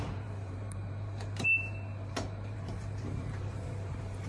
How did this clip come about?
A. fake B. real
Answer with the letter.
A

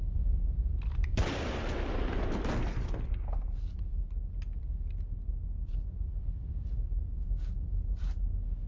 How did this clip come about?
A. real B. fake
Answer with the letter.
A